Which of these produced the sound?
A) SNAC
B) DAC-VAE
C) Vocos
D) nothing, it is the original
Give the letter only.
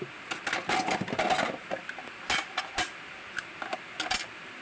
D